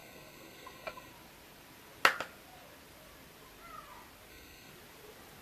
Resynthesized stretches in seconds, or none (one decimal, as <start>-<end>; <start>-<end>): 0.0-1.1; 4.3-4.7